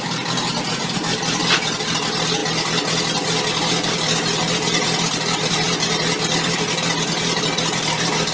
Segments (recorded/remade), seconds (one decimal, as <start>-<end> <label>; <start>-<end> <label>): 0.0-8.3 recorded